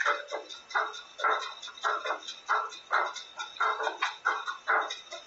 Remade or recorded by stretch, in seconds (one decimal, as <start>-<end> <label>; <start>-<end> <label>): 0.0-5.3 recorded

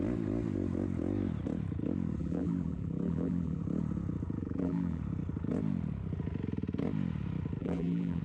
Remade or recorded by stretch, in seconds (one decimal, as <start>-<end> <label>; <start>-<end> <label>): 0.0-2.2 recorded; 2.2-3.6 remade; 3.6-4.4 recorded; 4.4-5.0 remade; 5.0-7.6 recorded; 7.6-8.2 remade

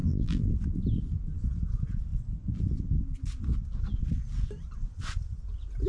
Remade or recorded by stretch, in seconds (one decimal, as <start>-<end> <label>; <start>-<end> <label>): 0.0-0.5 remade; 0.5-5.9 recorded

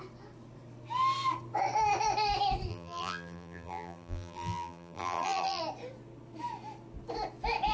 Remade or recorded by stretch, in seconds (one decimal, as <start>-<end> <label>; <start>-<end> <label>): 0.0-2.7 recorded; 2.7-5.6 remade; 5.6-7.7 recorded

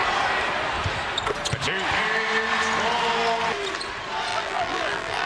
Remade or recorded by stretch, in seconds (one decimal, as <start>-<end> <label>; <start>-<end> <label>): 0.0-4.3 recorded; 4.3-5.3 remade